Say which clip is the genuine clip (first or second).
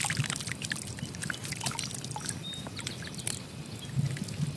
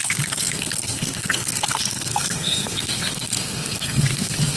first